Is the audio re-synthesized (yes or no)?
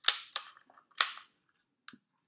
no